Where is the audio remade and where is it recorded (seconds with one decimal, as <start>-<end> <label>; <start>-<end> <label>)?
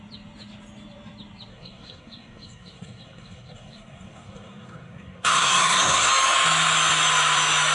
0.0-1.5 recorded; 1.5-6.1 remade; 6.1-7.7 recorded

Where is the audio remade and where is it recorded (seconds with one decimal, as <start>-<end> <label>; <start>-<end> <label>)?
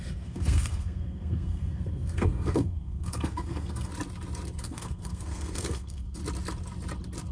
0.0-3.9 remade; 3.9-4.6 recorded; 4.6-6.2 remade; 6.2-7.3 recorded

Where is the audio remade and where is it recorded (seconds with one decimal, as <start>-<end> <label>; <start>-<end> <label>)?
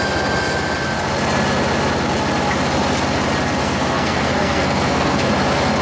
0.0-3.6 recorded; 3.6-5.3 remade; 5.3-5.8 recorded